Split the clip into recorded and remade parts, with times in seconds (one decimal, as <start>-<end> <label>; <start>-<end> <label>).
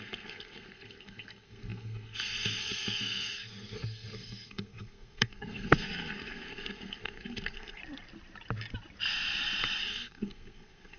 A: 0.0-7.8 remade; 7.8-9.8 recorded; 9.8-11.0 remade